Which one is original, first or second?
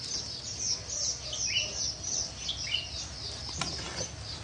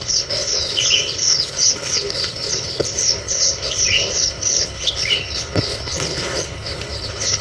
first